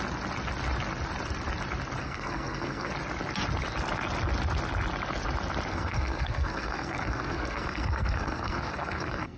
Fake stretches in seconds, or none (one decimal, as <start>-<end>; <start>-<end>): 2.0-2.9; 5.7-9.4